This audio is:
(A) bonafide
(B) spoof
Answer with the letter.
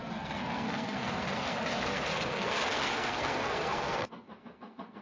B